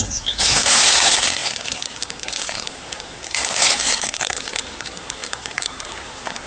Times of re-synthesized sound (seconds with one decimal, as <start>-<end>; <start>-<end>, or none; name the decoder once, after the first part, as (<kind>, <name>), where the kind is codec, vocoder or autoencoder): 0.0-6.5 (codec, SNAC)